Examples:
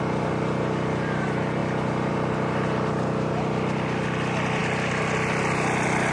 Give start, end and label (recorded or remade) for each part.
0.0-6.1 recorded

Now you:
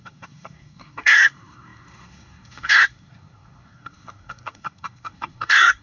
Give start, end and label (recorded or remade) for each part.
0.0-5.8 remade

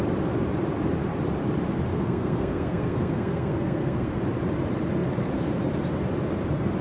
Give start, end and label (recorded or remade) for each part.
0.0-1.9 recorded; 1.9-4.2 remade; 4.2-6.8 recorded

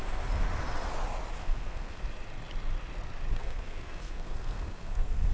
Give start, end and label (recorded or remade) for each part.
0.0-1.4 recorded; 1.4-2.0 remade; 2.0-3.3 recorded; 3.3-5.3 remade

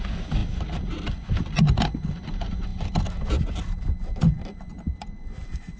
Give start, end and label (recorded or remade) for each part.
0.0-5.8 recorded

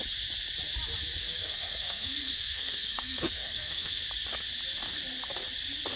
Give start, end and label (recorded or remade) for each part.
0.0-1.2 recorded; 1.2-4.0 remade; 4.0-6.0 recorded

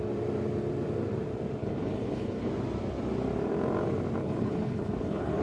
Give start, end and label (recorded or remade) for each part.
0.0-1.6 recorded; 1.6-2.5 remade; 2.5-4.2 recorded; 4.2-5.4 remade

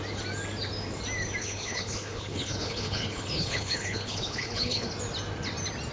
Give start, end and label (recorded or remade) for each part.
0.0-1.4 recorded; 1.4-4.9 remade; 4.9-5.9 recorded